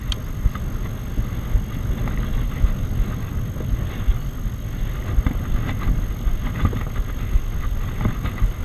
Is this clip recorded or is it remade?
recorded